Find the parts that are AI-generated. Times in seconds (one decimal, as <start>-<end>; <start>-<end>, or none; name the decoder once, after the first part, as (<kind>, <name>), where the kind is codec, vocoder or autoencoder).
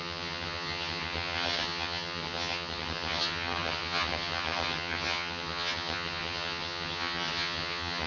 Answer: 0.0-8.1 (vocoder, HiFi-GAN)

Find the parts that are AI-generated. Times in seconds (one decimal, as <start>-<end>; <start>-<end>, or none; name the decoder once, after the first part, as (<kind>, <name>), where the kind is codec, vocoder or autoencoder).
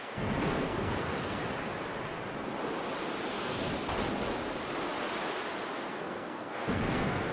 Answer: 0.0-1.4 (codec, SNAC); 3.3-3.7; 5.9-7.3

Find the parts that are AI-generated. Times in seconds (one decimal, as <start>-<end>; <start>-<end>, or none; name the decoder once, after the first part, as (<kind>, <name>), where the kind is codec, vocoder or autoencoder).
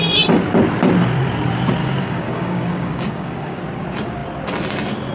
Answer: 1.8-3.6 (codec, DAC)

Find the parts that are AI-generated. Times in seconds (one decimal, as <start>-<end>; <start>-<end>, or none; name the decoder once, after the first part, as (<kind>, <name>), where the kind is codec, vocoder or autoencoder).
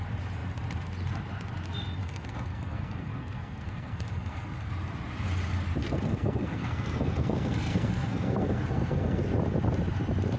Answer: 2.0-4.7 (codec, SNAC); 5.8-9.3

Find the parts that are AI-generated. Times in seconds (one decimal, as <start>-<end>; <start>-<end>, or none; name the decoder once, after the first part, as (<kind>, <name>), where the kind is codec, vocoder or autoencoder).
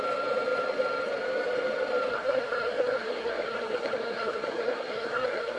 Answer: 2.1-5.6 (codec, SNAC)